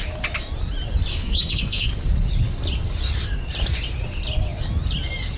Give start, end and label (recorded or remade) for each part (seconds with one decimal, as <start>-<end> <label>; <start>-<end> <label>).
0.0-1.1 recorded; 1.1-1.9 remade; 1.9-5.4 recorded

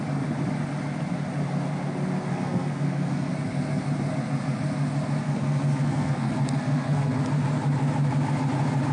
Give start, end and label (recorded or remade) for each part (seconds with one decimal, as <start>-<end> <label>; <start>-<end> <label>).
0.0-2.3 recorded; 2.3-3.3 remade; 3.3-5.2 recorded; 5.2-7.2 remade; 7.2-8.9 recorded

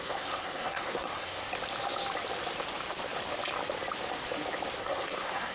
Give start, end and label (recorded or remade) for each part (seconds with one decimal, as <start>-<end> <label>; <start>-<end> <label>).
0.0-1.5 remade; 1.5-4.8 recorded; 4.8-5.5 remade

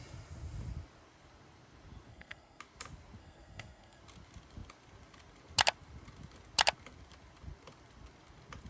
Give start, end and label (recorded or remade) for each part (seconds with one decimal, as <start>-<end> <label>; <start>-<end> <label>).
0.0-2.1 recorded; 2.1-2.6 remade; 2.6-3.2 recorded; 3.2-4.0 remade; 4.0-8.7 recorded

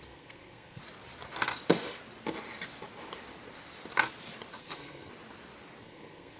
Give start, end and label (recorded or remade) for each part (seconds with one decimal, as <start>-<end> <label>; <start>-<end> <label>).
0.0-0.8 remade; 0.8-4.6 recorded; 4.6-5.1 remade; 5.1-5.8 recorded; 5.8-6.4 remade

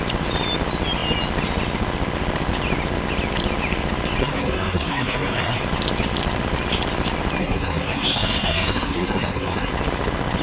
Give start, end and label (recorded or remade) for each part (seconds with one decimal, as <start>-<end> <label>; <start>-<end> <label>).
0.0-4.2 recorded; 4.2-5.6 remade; 5.6-7.4 recorded; 7.4-9.7 remade; 9.7-10.4 recorded

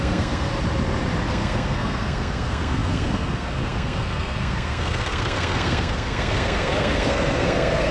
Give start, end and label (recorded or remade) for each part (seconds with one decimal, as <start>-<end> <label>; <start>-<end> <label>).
0.0-0.5 remade; 0.5-1.3 recorded; 1.3-7.9 remade